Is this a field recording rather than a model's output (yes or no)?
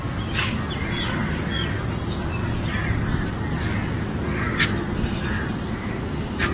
yes